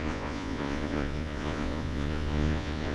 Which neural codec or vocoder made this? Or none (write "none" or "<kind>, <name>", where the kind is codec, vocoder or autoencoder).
vocoder, Vocos